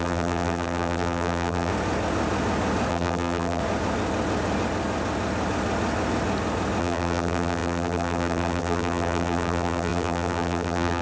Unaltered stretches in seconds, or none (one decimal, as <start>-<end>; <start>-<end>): 1.7-2.9; 3.6-6.8